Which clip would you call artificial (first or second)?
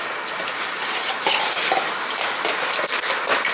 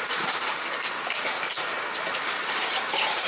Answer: second